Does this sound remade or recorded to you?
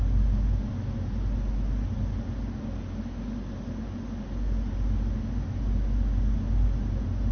recorded